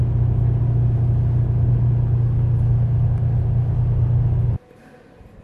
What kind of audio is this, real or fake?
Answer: real